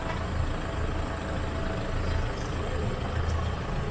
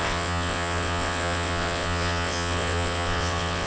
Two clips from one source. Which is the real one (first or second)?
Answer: first